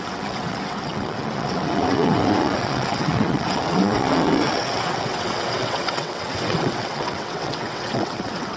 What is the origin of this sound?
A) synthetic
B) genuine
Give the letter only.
A